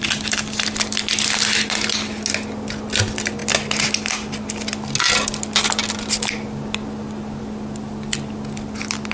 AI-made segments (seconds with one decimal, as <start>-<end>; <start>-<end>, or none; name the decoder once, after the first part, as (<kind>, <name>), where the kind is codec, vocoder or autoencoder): none